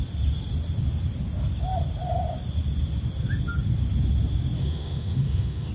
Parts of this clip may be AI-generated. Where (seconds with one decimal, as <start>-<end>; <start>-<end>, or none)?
4.6-5.7